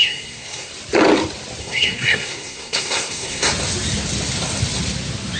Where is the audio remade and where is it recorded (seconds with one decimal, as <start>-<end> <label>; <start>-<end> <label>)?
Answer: 0.0-0.7 remade; 0.7-1.6 recorded; 1.6-3.5 remade; 3.5-5.4 recorded